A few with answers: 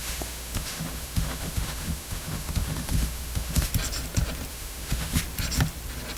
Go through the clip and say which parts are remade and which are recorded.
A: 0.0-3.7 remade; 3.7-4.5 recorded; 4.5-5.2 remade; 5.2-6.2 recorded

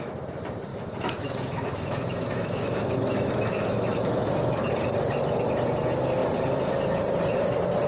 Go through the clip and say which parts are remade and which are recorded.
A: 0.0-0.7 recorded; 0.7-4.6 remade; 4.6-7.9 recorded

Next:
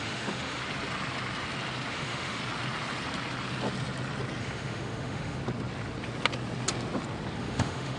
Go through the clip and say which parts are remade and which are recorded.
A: 0.0-0.6 remade; 0.6-1.9 recorded; 1.9-2.4 remade; 2.4-4.4 recorded; 4.4-5.4 remade; 5.4-7.4 recorded; 7.4-8.0 remade

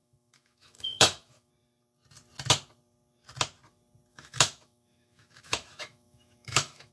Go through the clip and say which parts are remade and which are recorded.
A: 0.0-1.5 remade; 1.5-4.1 recorded; 4.1-6.9 remade

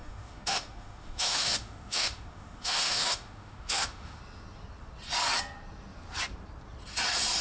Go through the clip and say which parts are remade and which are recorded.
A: 0.0-4.2 remade; 4.2-7.4 recorded

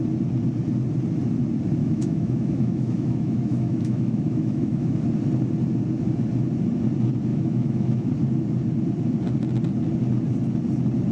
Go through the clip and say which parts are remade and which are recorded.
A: 0.0-1.8 recorded; 1.8-4.9 remade; 4.9-7.3 recorded; 7.3-8.1 remade; 8.1-11.1 recorded

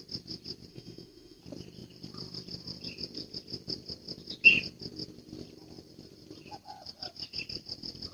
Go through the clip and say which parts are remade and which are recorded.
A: 0.0-0.7 recorded; 0.7-1.4 remade; 1.4-8.1 recorded

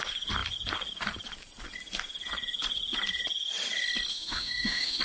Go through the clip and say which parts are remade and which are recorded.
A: 0.0-4.1 recorded; 4.1-5.0 remade